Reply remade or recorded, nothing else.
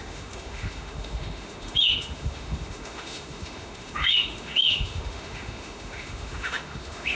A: remade